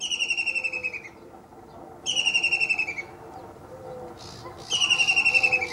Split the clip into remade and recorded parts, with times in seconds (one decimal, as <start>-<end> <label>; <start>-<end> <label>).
0.0-5.7 recorded